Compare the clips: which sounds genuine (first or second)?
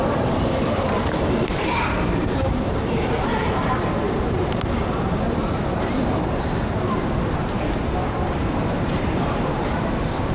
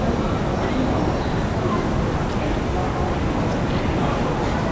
second